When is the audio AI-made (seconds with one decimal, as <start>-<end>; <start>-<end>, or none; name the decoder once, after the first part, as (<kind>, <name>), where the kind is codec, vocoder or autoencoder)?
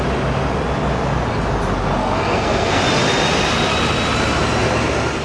2.0-2.8 (codec, SNAC)